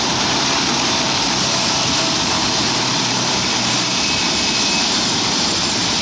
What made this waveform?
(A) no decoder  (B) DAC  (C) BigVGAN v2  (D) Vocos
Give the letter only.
C